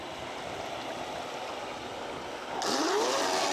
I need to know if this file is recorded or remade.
recorded